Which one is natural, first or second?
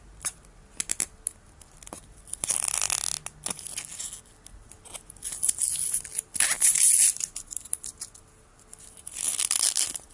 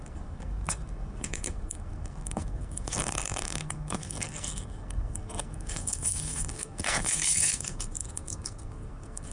first